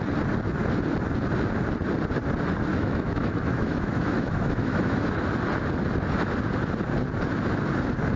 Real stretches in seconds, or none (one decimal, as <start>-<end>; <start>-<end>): 0.0-2.7; 5.2-8.2